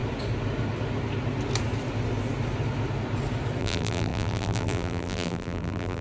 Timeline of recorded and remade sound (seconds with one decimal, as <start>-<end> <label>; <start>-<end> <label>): 0.0-3.6 recorded; 3.6-6.0 remade